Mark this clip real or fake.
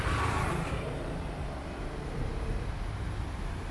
real